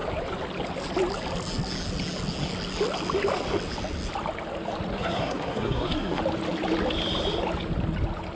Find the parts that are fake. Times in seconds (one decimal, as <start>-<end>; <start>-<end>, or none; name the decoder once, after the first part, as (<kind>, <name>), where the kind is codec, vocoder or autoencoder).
4.9-6.2 (codec, SNAC)